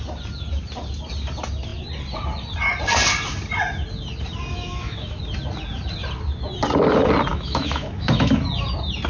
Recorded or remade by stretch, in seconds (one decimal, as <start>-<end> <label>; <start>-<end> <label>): 0.0-4.5 recorded; 4.5-5.2 remade; 5.2-7.3 recorded; 7.3-8.4 remade; 8.4-9.1 recorded